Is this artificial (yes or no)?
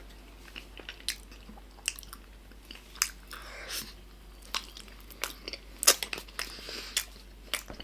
no